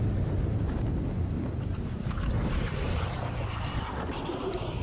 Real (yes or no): yes